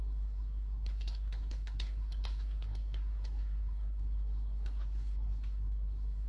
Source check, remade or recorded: remade